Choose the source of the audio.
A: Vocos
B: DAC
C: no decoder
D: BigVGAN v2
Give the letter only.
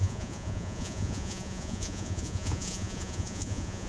A